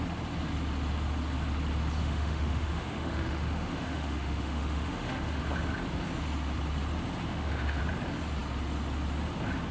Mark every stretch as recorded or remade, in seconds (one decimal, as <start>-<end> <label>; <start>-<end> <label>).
0.0-2.0 recorded; 2.0-5.4 remade; 5.4-7.3 recorded; 7.3-7.8 remade; 7.8-9.7 recorded